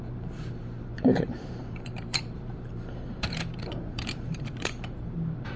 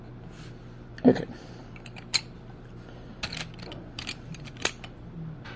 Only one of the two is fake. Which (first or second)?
first